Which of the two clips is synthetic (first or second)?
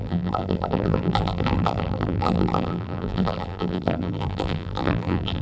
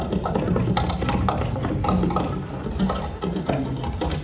first